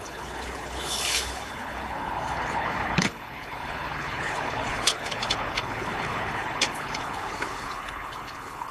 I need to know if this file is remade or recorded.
remade